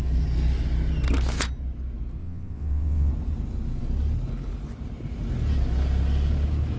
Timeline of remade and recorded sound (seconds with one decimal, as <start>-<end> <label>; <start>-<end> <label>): 0.0-2.2 recorded; 2.2-3.1 remade; 3.1-6.8 recorded